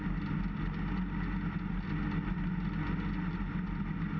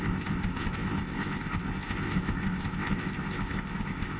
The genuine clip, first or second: first